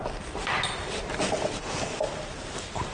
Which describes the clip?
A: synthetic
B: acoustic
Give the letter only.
B